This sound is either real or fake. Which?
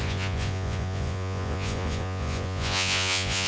fake